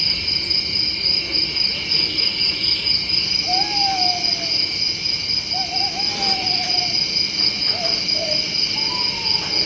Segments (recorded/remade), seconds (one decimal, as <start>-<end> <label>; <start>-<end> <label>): 0.0-9.7 recorded